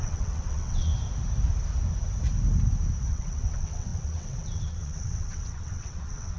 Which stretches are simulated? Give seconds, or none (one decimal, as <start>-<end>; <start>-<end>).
0.0-0.9; 3.1-6.4